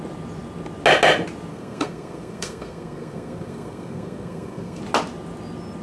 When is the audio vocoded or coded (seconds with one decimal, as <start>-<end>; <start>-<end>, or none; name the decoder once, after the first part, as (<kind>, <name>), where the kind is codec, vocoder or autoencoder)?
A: 1.5-4.8 (codec, SNAC)